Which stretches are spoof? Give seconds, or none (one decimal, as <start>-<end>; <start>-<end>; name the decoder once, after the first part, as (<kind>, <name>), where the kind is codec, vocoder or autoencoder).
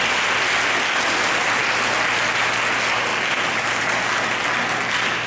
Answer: none